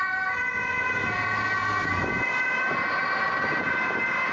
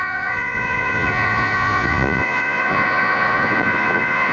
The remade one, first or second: second